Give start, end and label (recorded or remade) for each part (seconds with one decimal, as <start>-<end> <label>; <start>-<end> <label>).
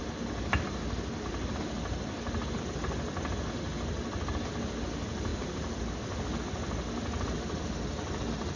0.0-5.3 recorded; 5.3-5.9 remade; 5.9-8.6 recorded